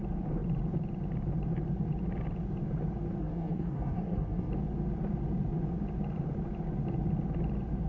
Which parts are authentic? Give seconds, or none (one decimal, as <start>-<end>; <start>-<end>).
0.0-3.2; 4.5-7.9